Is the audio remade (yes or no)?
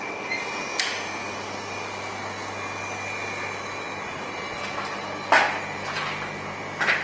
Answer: no